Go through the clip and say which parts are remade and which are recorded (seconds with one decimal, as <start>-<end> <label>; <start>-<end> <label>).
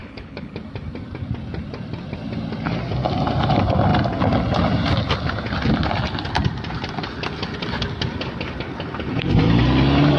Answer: 0.0-0.5 remade; 0.5-10.2 recorded